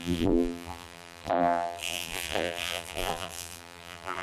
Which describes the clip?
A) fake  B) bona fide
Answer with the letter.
A